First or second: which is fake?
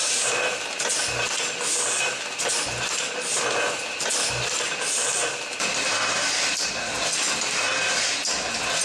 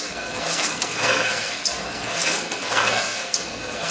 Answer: second